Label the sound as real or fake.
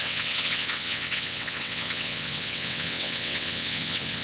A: fake